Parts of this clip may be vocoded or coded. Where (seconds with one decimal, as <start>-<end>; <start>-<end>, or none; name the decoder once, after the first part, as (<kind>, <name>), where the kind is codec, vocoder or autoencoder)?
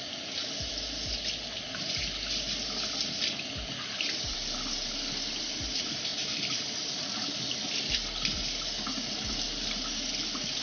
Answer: none